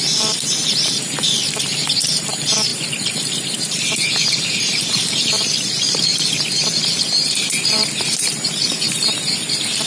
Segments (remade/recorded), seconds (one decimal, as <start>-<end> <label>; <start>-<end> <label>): 0.0-9.9 remade